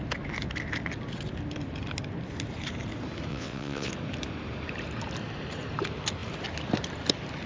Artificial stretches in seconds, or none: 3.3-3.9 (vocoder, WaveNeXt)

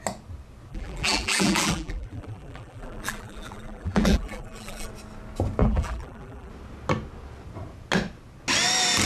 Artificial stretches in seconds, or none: 0.7-4.9 (vocoder, BigVGAN v2); 5.6-6.5

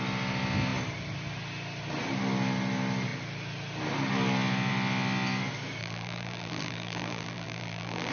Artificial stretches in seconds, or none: 5.8-8.1 (vocoder, BigVGAN v2)

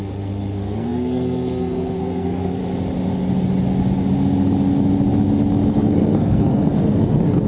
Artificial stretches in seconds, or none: 0.0-2.6 (codec, SNAC); 5.7-7.5